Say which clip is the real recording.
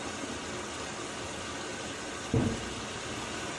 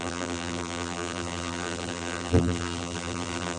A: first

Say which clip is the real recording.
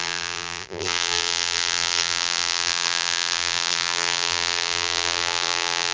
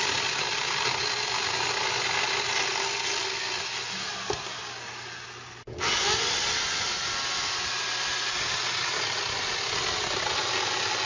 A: second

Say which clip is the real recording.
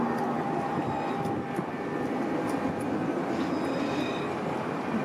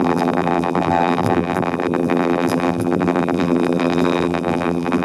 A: first